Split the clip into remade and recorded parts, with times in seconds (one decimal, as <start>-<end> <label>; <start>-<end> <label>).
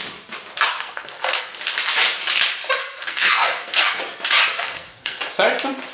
0.0-0.7 recorded; 0.7-1.5 remade; 1.5-2.8 recorded; 2.8-4.0 remade; 4.0-4.5 recorded; 4.5-5.2 remade; 5.2-5.9 recorded